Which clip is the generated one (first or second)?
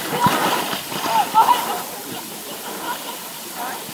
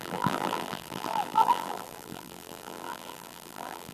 second